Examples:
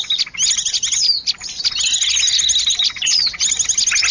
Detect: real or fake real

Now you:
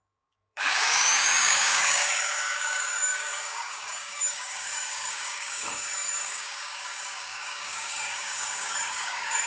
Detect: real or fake fake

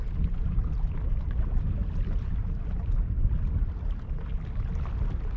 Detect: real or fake real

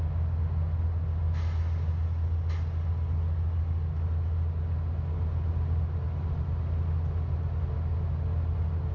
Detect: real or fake real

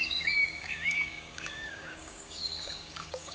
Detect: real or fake fake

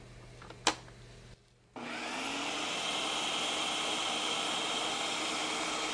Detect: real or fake real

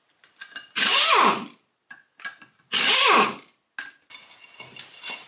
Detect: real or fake real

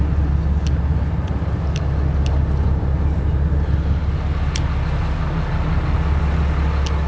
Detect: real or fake real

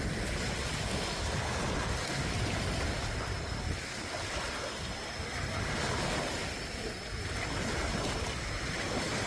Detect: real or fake real